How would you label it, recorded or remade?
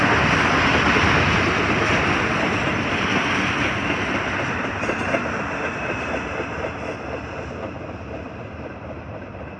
recorded